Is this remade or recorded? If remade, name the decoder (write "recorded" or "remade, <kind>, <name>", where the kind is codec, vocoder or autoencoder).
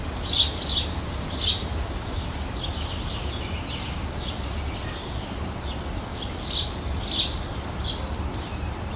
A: recorded